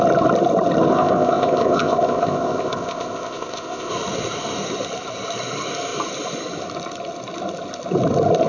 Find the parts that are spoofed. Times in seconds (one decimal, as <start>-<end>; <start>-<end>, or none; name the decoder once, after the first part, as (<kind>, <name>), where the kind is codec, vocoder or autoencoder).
0.9-3.9 (codec, ZipCodec)